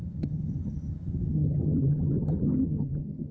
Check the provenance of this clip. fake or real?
fake